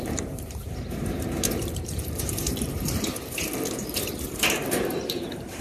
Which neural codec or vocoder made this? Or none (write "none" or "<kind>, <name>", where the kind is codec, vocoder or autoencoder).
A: vocoder, BigVGAN v2